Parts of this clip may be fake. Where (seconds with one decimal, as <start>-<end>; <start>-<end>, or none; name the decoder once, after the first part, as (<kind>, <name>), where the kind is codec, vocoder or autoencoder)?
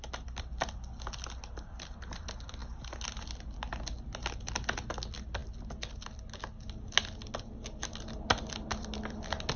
none